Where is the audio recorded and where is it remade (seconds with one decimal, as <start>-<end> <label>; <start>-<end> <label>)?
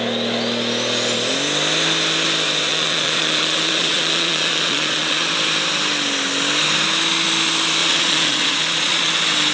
0.0-2.7 recorded; 2.7-5.3 remade; 5.3-7.8 recorded; 7.8-9.1 remade; 9.1-9.5 recorded